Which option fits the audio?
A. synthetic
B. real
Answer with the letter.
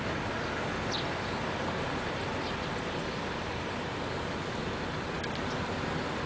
B